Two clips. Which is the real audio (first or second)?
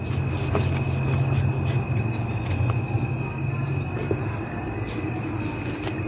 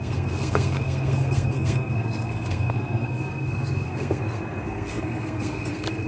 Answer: first